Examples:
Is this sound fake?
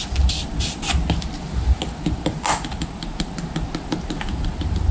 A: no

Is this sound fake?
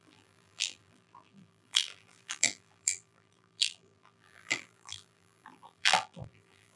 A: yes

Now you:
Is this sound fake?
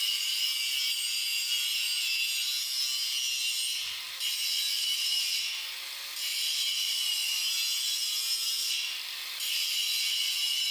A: no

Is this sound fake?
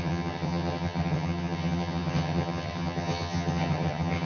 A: yes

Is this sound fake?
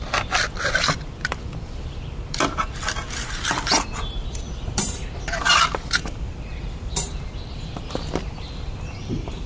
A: yes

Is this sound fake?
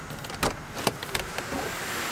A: no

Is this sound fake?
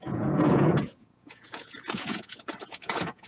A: yes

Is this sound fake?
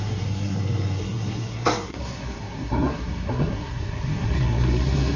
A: yes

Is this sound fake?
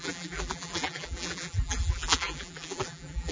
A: yes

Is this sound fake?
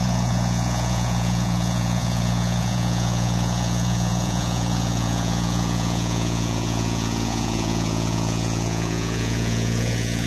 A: yes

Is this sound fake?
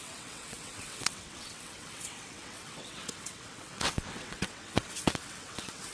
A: yes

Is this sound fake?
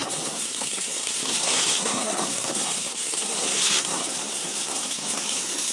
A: yes